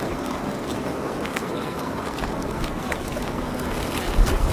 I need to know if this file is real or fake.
fake